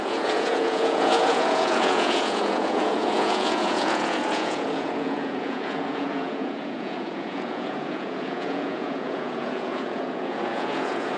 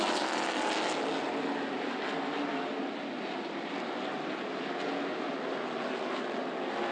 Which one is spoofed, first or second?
first